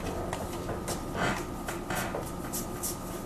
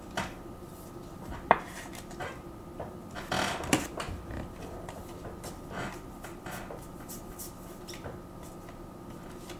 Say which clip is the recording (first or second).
first